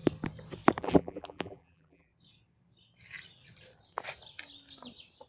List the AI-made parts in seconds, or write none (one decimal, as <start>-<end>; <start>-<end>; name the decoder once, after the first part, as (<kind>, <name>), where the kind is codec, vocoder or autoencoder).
0.8-2.1 (vocoder, BigVGAN v2)